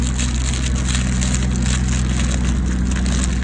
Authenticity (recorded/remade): recorded